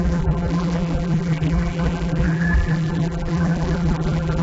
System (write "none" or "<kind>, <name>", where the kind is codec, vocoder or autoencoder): vocoder, BigVGAN v2